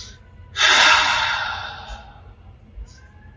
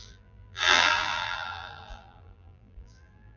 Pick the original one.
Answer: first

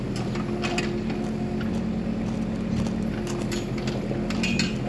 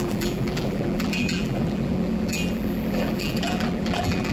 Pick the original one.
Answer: first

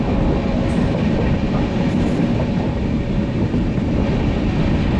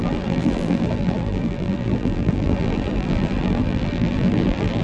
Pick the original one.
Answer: first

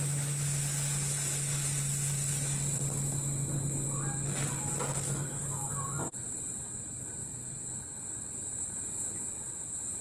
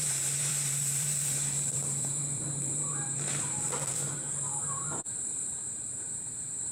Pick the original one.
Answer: first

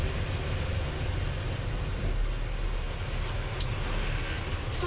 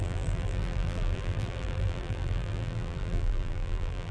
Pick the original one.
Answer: first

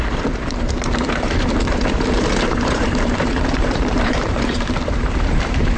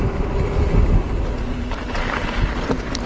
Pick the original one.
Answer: second